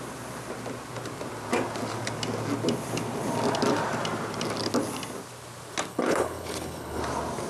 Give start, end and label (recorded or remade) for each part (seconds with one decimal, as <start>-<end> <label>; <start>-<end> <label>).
0.0-5.9 recorded; 5.9-7.0 remade; 7.0-7.5 recorded